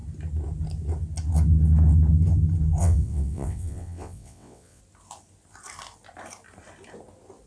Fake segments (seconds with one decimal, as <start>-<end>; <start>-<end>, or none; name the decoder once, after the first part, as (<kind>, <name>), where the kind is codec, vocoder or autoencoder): 2.8-4.8 (vocoder, WaveNeXt)